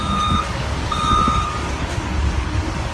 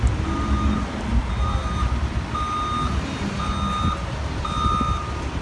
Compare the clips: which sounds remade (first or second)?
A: first